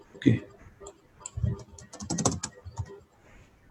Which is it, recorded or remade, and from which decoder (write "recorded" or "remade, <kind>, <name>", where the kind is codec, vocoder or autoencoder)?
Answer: recorded